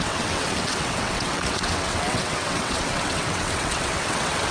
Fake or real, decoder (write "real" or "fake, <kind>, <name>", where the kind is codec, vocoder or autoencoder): fake, vocoder, WaveNeXt